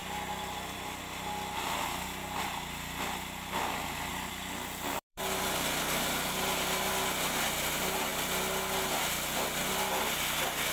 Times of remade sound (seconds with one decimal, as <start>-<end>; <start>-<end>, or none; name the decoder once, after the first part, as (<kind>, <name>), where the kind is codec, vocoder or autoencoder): 0.0-1.0 (vocoder, BigVGAN v2); 4.1-5.2